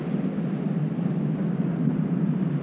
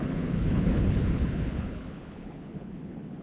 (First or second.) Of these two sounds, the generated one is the second